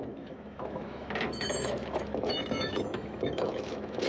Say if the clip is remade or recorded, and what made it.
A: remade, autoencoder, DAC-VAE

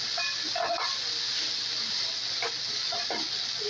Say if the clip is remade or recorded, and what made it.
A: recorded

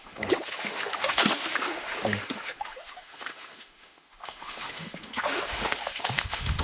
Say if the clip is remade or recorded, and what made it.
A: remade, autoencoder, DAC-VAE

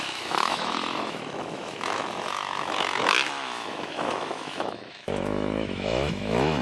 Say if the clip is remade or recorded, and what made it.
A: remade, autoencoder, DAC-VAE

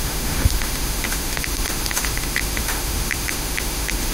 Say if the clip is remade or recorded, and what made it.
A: remade, autoencoder, DAC-VAE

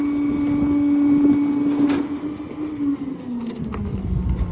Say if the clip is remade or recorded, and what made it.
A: recorded